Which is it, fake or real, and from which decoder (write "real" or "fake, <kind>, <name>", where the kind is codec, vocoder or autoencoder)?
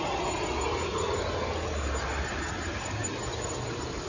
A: real